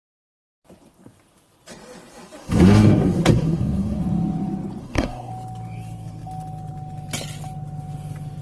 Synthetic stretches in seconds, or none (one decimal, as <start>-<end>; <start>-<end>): 2.4-4.0; 4.8-5.3